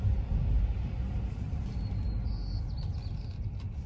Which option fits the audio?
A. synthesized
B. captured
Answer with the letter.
B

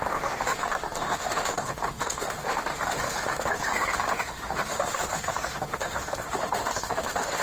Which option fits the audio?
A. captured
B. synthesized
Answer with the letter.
B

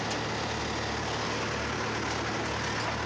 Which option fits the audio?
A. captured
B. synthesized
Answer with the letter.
A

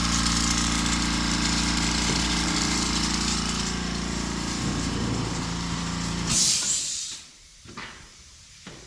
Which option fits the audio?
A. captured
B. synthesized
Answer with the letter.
B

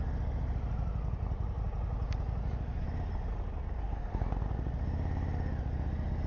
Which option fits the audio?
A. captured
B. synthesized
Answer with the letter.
A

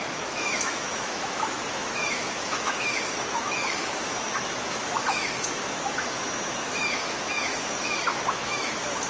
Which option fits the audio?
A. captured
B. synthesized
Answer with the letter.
B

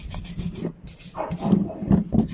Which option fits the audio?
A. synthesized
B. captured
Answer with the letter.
B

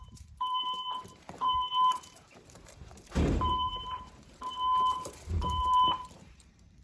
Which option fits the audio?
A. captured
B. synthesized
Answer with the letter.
B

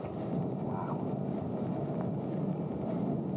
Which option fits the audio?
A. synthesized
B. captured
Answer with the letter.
B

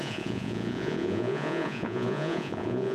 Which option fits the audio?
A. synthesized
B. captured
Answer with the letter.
A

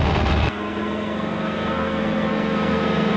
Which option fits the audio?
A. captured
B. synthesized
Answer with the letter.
B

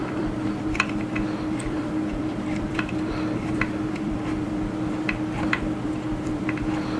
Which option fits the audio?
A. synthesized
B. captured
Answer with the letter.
A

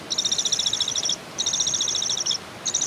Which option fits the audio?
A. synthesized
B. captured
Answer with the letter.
B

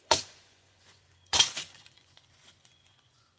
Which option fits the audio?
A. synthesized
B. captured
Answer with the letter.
A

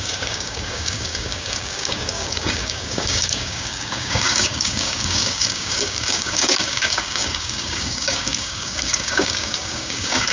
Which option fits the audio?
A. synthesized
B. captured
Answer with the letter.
A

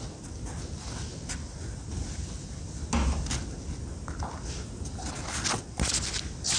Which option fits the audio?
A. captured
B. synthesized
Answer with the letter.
A